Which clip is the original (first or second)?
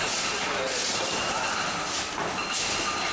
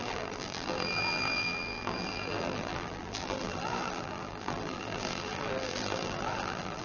first